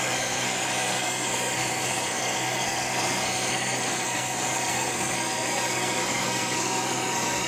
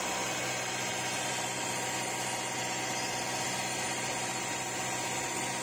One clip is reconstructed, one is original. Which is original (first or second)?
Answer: second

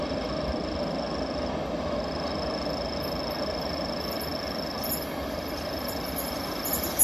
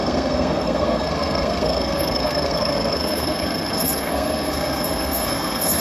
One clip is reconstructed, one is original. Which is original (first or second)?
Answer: first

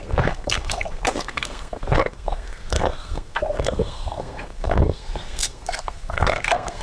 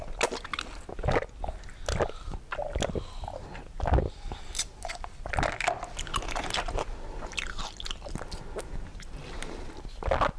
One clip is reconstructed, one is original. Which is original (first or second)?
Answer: second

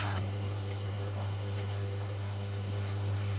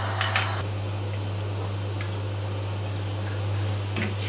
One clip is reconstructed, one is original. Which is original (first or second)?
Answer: second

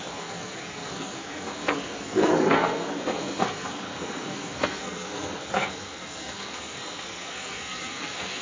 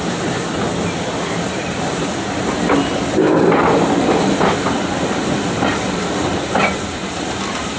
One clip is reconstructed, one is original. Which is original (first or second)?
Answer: second